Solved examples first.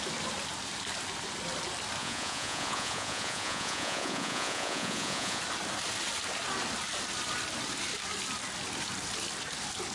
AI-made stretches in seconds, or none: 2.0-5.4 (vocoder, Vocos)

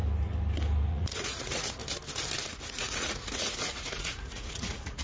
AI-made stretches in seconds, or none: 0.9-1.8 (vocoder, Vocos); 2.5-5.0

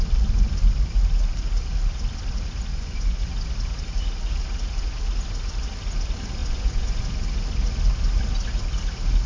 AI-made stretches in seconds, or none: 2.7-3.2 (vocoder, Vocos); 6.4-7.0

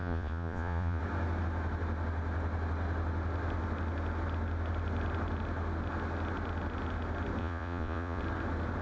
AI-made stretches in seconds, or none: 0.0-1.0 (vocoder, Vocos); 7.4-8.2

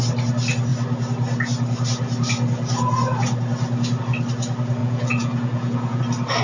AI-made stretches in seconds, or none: 4.8-6.0 (vocoder, Vocos)

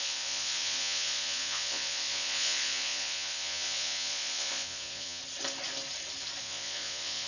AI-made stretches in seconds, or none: 0.0-5.2 (vocoder, Vocos); 6.4-7.3

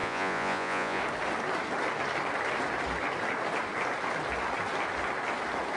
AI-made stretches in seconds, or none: 0.0-1.0 (vocoder, Vocos)

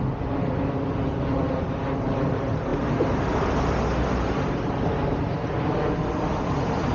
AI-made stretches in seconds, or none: none